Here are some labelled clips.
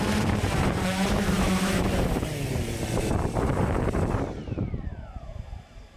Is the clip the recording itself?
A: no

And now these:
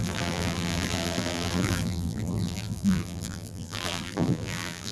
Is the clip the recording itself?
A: no